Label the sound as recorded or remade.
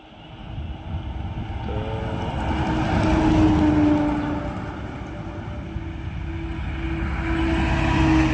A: recorded